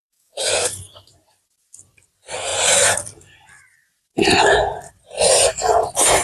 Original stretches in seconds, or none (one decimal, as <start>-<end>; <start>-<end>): 1.1-6.2